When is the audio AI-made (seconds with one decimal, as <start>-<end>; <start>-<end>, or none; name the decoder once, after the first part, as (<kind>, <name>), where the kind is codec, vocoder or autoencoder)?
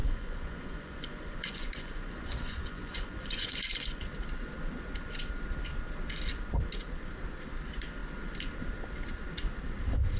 0.0-4.0 (vocoder, Vocos)